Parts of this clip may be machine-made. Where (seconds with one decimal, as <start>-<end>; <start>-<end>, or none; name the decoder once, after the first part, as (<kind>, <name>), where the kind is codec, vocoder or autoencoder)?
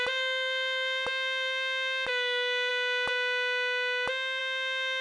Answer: none